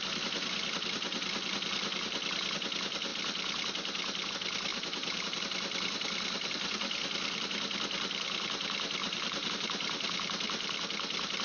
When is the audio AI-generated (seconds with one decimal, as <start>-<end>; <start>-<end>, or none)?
4.7-5.4; 9.0-9.5